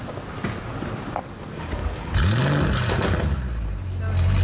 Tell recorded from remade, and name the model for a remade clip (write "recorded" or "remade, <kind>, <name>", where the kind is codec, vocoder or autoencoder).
recorded